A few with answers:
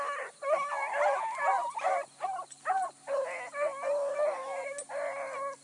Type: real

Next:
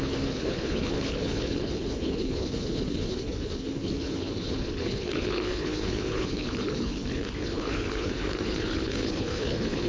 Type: fake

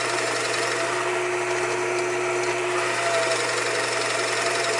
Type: real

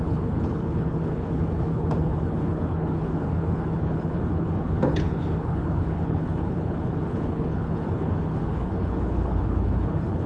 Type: fake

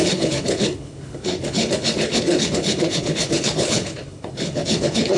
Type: fake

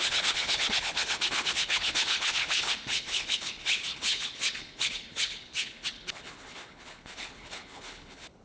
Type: fake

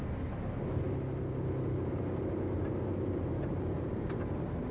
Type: real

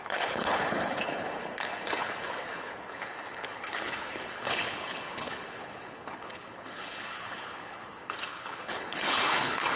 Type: fake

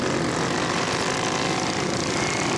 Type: real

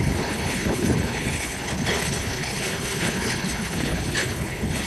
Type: fake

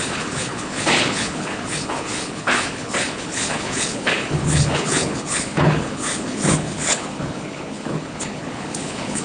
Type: fake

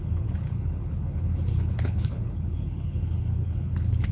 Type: fake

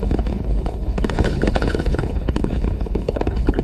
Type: fake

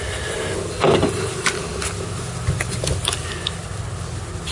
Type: real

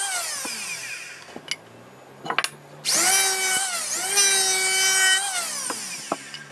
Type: real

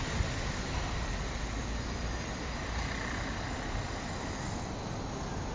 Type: real